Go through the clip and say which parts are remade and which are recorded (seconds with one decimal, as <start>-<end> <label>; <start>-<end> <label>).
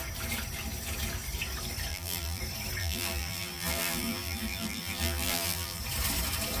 0.0-1.9 recorded; 1.9-2.4 remade; 2.4-2.8 recorded; 2.8-5.8 remade; 5.8-6.6 recorded